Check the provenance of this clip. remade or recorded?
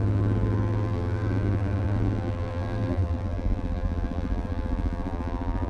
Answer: remade